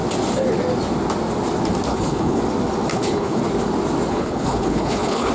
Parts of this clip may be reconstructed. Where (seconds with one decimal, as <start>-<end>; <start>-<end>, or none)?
1.9-2.4; 2.9-3.4; 4.1-5.3